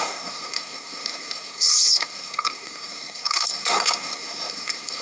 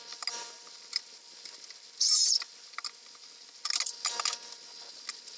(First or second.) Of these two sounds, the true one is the second